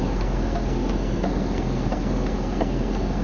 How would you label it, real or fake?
fake